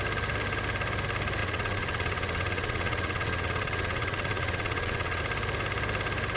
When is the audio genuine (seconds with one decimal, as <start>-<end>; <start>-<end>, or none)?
0.0-1.4; 5.2-6.4